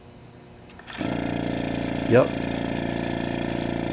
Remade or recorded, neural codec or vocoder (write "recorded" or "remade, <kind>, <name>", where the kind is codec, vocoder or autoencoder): recorded